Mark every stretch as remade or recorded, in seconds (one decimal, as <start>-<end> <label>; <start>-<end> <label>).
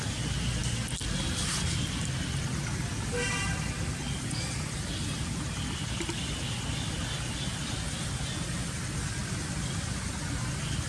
0.0-10.9 recorded